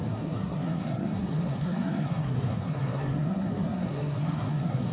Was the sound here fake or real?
fake